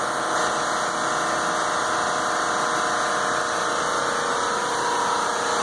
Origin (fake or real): real